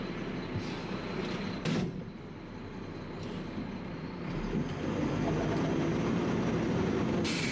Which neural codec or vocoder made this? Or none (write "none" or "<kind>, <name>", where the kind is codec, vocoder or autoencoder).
none